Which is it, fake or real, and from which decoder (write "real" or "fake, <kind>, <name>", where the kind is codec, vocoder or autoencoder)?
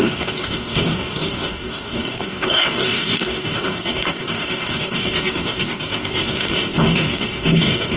fake, codec, DAC